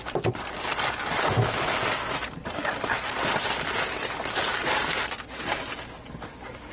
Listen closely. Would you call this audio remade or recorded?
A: recorded